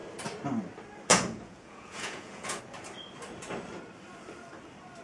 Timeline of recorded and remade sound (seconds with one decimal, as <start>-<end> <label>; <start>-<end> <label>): 0.0-1.1 recorded; 1.1-2.6 remade; 2.6-5.0 recorded